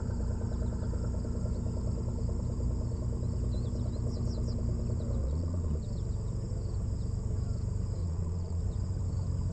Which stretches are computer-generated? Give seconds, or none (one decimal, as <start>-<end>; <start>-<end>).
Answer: 5.2-5.8; 8.0-8.6